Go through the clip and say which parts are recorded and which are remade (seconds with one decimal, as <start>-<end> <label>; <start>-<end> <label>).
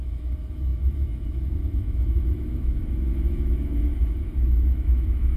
0.0-5.4 remade